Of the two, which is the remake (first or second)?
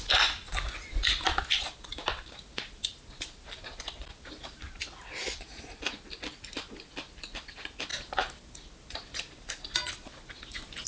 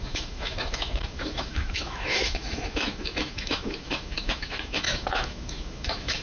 second